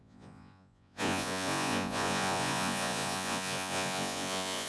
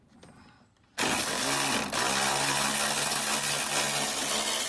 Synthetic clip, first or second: first